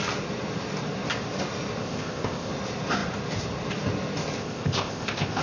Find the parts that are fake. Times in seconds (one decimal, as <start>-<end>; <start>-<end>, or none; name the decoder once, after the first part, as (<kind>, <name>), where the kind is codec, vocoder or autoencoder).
1.8-2.5 (codec, ZipCodec); 4.4-5.4